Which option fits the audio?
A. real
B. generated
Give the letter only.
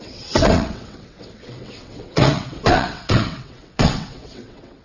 B